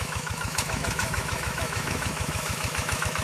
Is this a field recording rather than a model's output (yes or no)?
no